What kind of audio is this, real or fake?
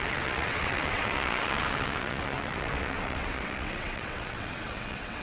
fake